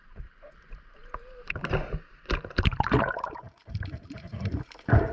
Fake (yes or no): yes